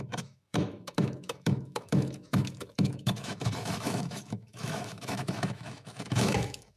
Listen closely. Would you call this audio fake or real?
fake